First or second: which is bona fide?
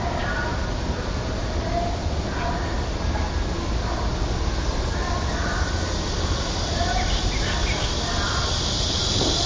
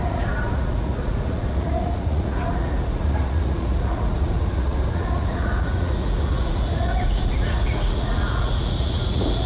first